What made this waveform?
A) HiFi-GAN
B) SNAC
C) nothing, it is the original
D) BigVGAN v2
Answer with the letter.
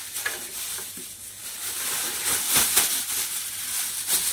C